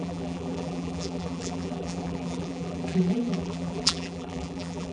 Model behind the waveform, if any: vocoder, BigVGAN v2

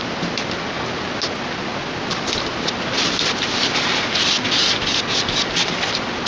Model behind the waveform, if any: none